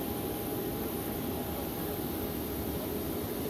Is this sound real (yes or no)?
yes